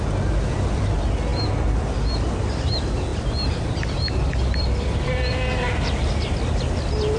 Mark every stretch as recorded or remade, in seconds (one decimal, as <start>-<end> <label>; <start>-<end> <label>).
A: 0.0-1.3 recorded; 1.3-2.3 remade; 2.3-3.1 recorded; 3.1-7.2 remade